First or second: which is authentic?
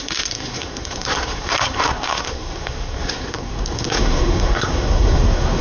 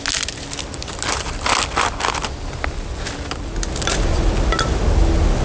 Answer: second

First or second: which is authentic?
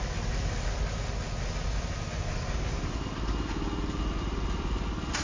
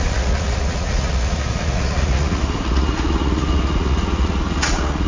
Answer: first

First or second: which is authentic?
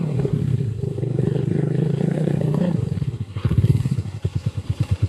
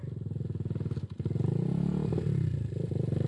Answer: second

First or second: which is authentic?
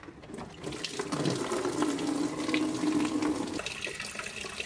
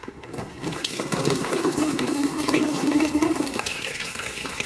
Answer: first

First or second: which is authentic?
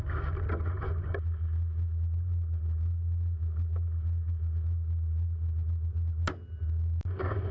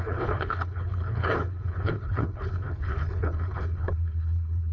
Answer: first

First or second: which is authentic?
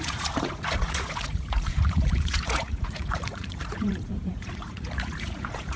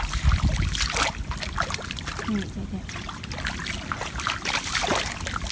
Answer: second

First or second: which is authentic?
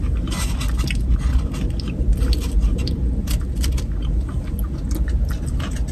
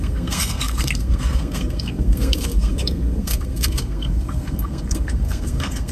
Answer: first